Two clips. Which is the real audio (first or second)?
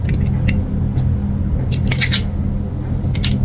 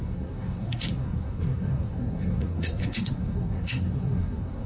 first